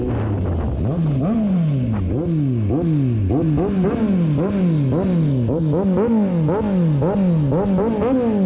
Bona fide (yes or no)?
yes